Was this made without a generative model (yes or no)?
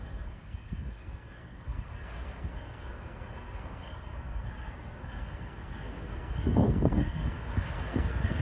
no